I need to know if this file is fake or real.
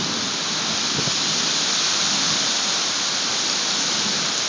real